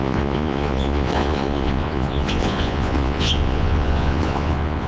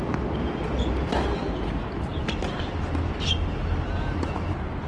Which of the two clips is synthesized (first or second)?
first